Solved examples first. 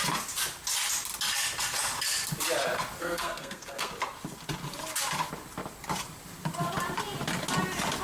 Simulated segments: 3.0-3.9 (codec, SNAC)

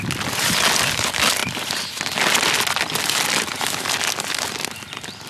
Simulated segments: none